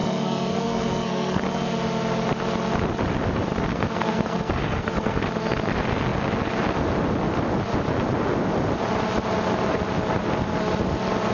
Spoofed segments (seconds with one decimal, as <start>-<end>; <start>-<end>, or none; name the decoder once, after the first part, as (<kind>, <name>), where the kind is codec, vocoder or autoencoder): 0.0-1.4 (codec, SNAC); 3.7-5.2